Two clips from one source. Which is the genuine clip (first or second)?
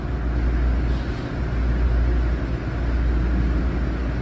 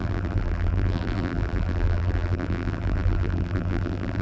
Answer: first